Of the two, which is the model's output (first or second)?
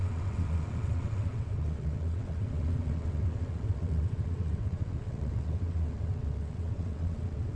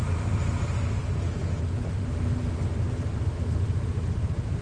first